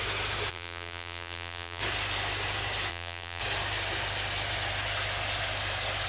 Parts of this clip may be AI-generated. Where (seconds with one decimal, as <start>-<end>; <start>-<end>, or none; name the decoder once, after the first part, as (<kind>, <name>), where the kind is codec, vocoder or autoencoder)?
0.5-1.8 (vocoder, BigVGAN v2); 2.9-3.4